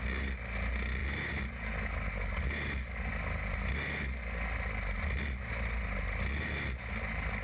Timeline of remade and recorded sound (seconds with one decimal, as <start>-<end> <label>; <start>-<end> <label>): 0.0-7.4 recorded